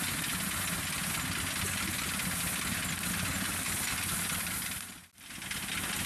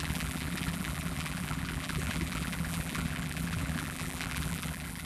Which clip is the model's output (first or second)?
second